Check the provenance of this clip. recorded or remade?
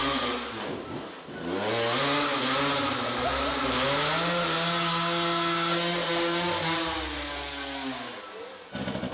recorded